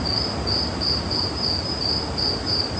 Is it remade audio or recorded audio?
recorded